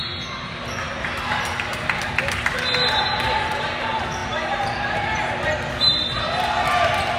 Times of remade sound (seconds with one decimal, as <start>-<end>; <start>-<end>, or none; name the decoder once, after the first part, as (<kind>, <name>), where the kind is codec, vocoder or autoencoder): none